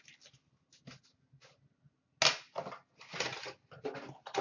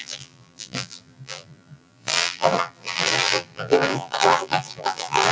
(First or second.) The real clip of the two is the first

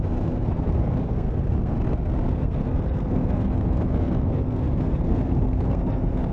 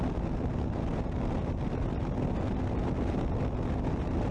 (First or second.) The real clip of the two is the second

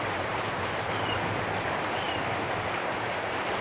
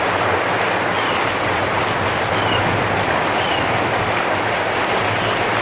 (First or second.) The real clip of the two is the second